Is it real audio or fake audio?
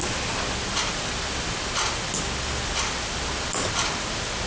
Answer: real